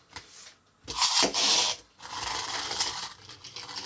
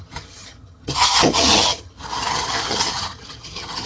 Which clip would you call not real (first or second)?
second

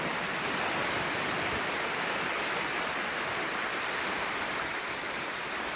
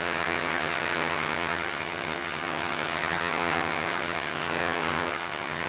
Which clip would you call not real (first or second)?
second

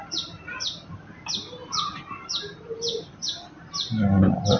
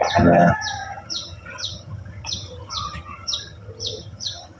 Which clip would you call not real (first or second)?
second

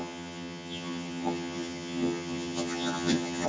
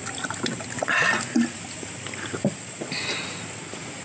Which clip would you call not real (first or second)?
first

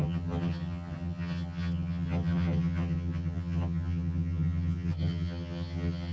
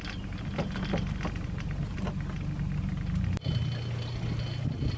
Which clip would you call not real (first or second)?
first